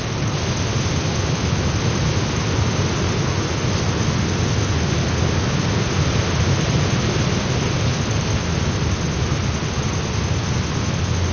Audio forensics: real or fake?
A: real